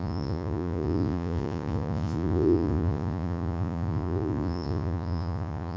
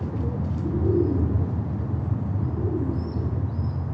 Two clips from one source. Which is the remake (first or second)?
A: first